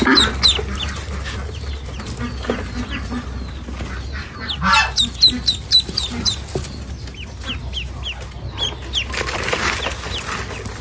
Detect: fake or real real